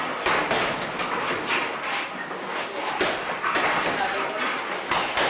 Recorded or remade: recorded